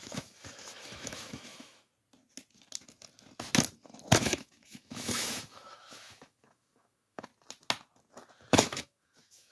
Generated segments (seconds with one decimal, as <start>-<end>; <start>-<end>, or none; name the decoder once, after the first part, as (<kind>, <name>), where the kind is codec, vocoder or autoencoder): 0.0-1.9 (autoencoder, DAC-VAE); 4.2-7.3; 8.5-9.5